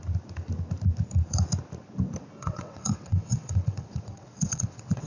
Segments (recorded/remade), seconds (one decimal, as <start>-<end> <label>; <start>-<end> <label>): 0.0-2.4 recorded; 2.4-5.1 remade